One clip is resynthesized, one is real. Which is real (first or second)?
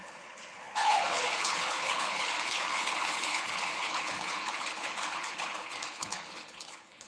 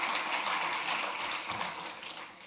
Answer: second